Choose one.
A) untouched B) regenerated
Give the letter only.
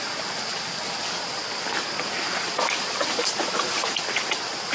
A